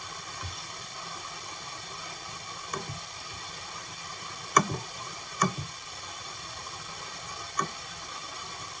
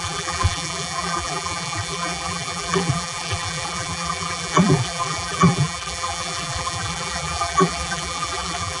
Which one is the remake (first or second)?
second